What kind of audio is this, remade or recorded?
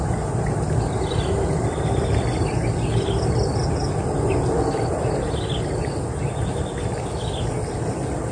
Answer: recorded